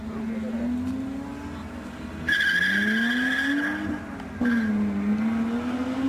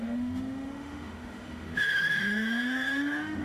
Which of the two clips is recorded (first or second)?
first